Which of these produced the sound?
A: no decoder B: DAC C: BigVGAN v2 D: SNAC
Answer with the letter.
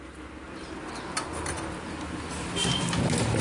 A